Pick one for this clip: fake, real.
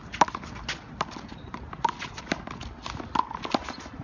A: real